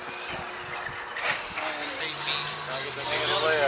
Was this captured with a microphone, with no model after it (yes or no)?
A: yes